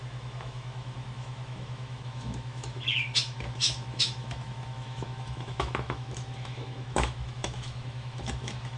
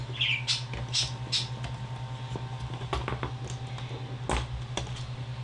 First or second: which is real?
second